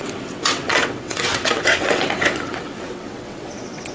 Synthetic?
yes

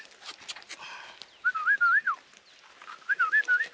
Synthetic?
no